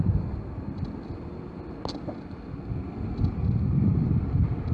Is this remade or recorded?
recorded